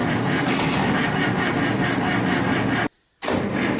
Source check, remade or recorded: recorded